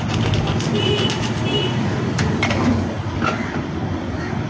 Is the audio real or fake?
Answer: real